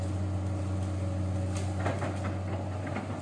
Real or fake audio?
real